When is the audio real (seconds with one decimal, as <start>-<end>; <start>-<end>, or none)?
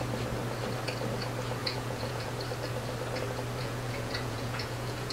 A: 0.0-1.6; 2.3-3.6